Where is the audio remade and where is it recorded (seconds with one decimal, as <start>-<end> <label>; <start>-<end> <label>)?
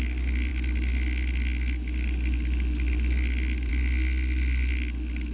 0.0-5.3 recorded